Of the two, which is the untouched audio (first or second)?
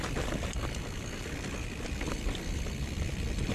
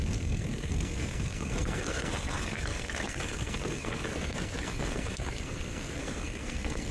first